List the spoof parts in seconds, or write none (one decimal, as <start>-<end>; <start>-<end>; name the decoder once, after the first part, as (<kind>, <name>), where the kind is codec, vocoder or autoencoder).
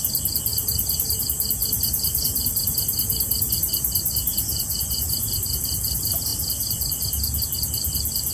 0.5-1.2 (vocoder, BigVGAN v2); 1.6-5.4